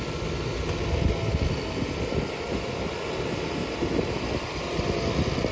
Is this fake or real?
real